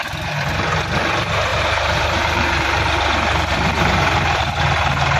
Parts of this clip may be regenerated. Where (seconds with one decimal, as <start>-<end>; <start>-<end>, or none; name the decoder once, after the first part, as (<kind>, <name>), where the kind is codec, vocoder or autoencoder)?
1.5-4.4 (vocoder, BigVGAN v2)